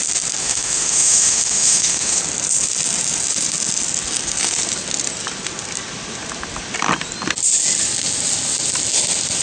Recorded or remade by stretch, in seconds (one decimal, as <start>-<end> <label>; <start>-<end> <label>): 0.0-0.4 recorded; 0.4-2.2 remade; 2.2-9.4 recorded